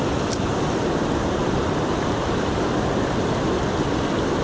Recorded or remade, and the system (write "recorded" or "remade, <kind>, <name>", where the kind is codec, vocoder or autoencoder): recorded